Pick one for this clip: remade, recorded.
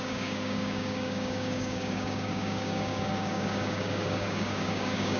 remade